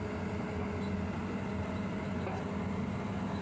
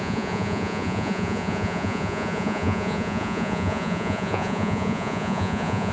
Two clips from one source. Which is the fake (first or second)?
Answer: second